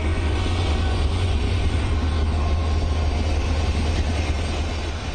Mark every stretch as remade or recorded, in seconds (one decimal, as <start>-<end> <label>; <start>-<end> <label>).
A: 0.0-1.9 remade; 1.9-5.1 recorded